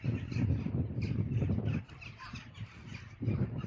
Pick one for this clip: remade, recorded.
recorded